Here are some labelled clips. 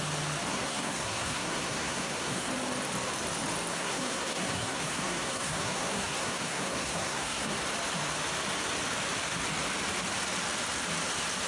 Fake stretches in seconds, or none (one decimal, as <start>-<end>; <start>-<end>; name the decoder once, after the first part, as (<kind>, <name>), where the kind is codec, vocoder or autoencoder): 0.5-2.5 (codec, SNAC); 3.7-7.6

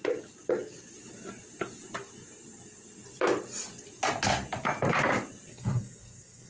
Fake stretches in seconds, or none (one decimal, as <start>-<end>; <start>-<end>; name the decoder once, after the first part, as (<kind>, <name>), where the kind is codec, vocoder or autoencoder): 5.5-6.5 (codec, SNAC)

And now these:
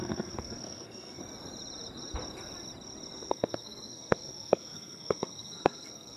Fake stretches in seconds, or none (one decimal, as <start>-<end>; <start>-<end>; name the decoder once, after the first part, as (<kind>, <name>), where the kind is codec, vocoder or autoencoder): 0.0-1.2 (codec, SNAC); 3.3-6.2

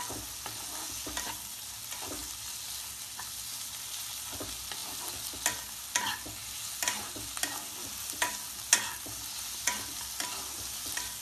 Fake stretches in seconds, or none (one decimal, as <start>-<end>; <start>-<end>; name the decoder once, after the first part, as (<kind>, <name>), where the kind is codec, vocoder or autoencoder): none

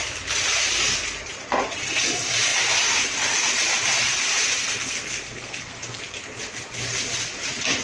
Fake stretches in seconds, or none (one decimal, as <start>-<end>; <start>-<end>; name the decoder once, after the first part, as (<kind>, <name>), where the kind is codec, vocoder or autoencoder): 4.6-6.0 (codec, SNAC)

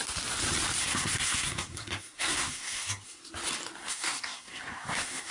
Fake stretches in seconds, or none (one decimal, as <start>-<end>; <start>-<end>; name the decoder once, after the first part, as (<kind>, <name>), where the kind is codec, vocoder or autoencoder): 0.8-3.2 (codec, SNAC); 3.8-5.3

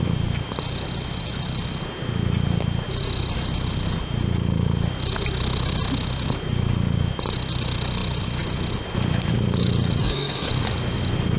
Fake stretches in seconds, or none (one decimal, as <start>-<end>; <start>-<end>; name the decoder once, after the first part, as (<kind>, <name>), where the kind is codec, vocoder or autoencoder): 10.0-10.5 (codec, SNAC)

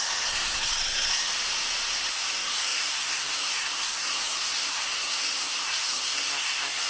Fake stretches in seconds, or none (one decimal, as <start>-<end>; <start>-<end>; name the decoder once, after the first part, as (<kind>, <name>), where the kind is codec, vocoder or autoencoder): 0.0-1.3 (codec, SNAC); 2.1-6.9